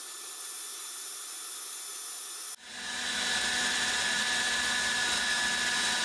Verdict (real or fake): real